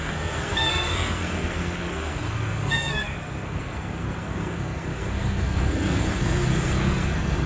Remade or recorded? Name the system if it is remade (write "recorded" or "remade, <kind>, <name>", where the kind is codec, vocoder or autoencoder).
remade, codec, SNAC